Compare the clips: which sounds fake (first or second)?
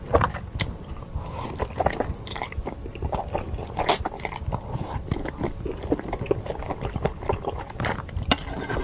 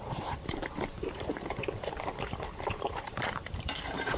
second